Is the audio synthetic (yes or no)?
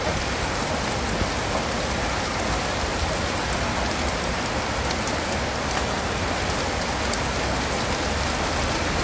no